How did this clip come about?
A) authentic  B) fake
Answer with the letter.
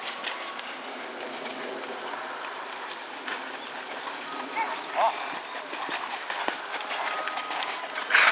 A